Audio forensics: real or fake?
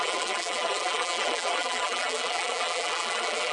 fake